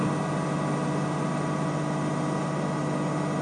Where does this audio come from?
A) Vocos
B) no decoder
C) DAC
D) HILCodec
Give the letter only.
B